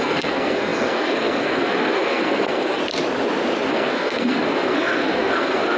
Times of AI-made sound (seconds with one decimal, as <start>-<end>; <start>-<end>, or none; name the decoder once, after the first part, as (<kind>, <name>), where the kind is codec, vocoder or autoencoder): 0.0-2.8 (codec, SNAC); 3.7-5.8